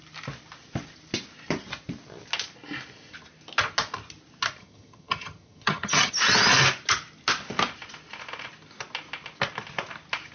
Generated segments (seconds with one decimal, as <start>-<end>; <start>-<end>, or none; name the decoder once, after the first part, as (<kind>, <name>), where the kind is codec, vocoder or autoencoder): 4.6-6.1 (vocoder, HiFi-GAN)